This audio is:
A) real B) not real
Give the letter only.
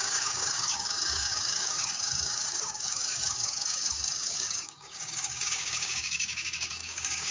B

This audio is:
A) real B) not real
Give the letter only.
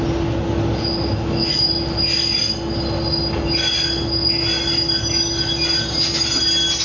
A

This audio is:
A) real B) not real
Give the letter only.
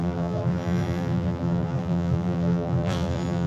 B